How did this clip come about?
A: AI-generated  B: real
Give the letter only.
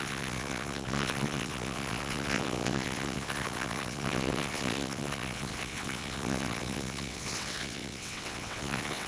A